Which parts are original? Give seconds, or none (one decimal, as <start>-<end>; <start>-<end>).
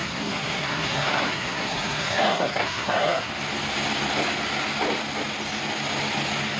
3.3-6.6